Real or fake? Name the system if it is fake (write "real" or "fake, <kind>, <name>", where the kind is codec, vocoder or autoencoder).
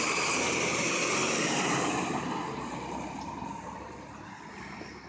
real